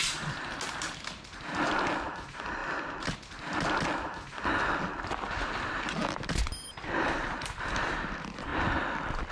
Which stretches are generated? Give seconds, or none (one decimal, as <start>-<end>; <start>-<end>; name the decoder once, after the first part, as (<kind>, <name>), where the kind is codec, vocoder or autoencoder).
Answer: none